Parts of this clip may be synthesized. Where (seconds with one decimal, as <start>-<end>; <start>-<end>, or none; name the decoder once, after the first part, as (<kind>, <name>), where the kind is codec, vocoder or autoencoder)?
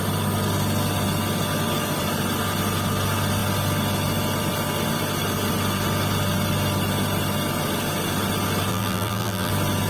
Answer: 8.7-9.5 (vocoder, BigVGAN v2)